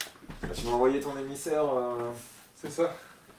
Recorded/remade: recorded